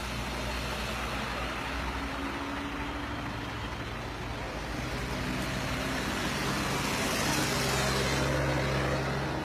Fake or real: real